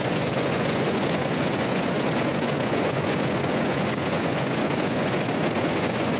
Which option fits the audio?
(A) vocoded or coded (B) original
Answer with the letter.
A